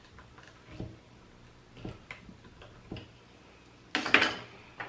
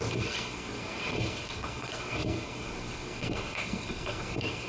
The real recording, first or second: first